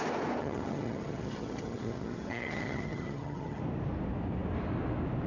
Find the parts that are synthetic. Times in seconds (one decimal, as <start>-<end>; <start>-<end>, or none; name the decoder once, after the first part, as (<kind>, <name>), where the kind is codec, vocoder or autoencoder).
0.4-3.6 (vocoder, HiFi-GAN)